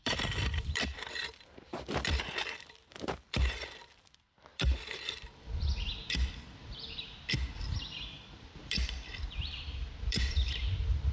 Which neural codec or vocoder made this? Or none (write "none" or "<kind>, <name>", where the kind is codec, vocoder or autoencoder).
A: vocoder, BigVGAN v2